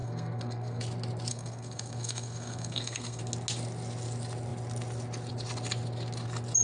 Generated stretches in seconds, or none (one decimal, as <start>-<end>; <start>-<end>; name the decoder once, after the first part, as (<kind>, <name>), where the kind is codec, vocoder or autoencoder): 0.0-0.8 (codec, SNAC); 1.3-3.2